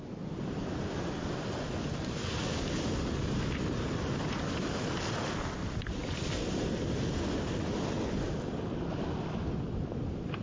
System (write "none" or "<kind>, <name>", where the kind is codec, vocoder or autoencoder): none